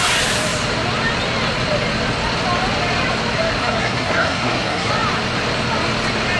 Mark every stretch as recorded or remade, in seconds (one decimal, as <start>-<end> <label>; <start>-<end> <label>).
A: 0.0-3.6 recorded; 3.6-4.9 remade; 4.9-6.4 recorded